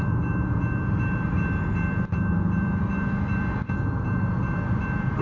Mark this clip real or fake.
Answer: real